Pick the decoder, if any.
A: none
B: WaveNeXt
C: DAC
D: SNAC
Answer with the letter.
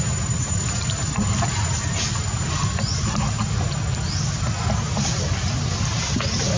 A